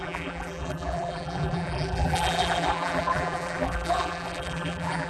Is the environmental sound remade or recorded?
remade